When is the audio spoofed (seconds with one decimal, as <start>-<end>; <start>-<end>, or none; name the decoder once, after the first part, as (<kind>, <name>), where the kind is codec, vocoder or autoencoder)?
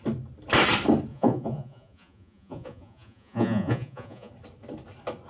1.1-4.3 (vocoder, Vocos)